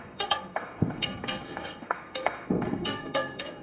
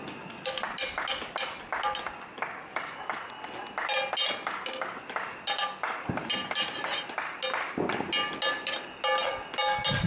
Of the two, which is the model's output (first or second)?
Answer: first